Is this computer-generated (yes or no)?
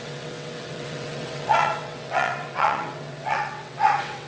yes